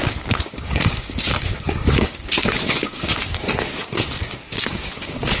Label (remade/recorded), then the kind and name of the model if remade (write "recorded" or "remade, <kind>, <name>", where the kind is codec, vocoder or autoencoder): remade, codec, DAC